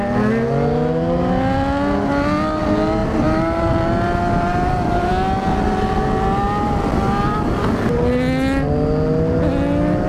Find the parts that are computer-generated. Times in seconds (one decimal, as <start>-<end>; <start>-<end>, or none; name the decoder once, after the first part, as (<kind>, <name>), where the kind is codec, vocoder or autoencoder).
3.0-3.7 (vocoder, BigVGAN v2); 4.5-5.1